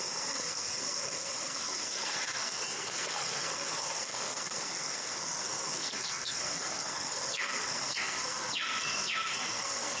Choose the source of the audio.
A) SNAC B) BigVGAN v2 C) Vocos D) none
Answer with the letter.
A